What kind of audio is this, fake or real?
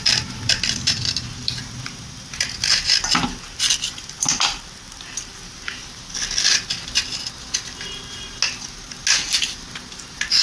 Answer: real